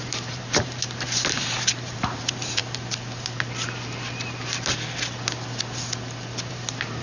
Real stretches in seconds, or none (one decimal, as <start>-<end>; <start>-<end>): 2.6-6.5

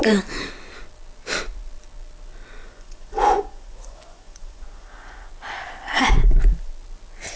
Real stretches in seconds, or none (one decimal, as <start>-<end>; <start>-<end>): 0.0-2.6; 5.3-7.4

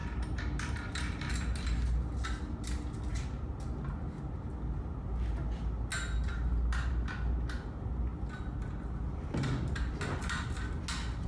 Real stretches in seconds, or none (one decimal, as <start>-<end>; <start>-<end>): 1.3-11.3

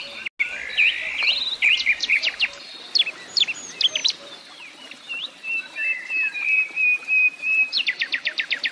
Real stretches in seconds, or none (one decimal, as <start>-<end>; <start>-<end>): 0.0-1.7; 2.4-4.0